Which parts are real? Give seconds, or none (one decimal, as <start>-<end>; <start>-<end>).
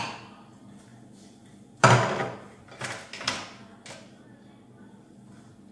0.0-5.7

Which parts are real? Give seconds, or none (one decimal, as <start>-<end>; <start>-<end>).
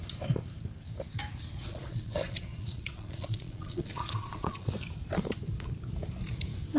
0.0-1.6; 4.7-6.8